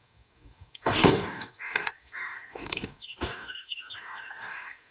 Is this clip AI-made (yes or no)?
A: yes